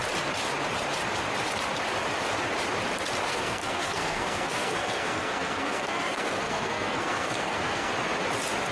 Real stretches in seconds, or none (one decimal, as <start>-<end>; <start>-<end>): 0.0-3.3; 7.9-8.7